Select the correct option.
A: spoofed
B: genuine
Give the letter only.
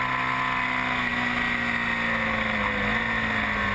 B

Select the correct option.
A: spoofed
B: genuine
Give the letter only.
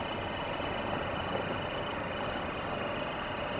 B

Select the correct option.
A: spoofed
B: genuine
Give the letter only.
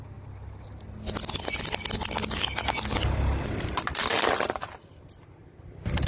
B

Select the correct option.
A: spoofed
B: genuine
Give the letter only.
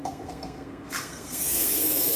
A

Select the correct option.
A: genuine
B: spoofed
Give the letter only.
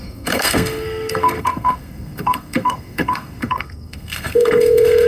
B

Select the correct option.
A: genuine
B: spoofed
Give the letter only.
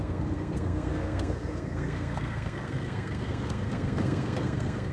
B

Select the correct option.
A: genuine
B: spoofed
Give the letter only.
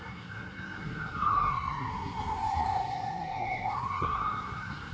B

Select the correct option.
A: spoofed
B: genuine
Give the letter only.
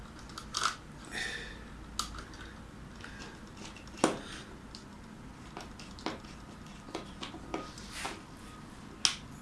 B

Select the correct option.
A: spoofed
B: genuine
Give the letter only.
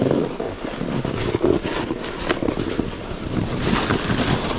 B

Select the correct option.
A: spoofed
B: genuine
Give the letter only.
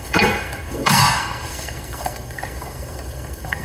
A